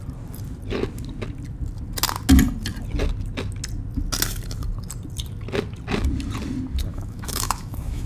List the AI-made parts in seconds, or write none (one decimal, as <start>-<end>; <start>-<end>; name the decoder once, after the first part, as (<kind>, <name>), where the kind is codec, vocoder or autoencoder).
6.9-8.1 (autoencoder, DAC-VAE)